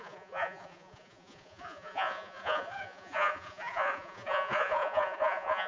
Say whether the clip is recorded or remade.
remade